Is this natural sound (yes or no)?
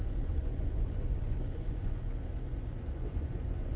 no